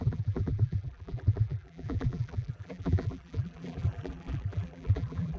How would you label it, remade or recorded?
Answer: remade